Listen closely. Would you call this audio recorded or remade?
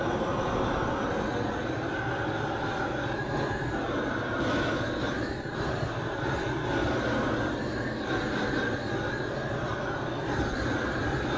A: recorded